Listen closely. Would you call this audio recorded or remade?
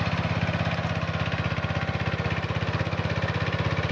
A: recorded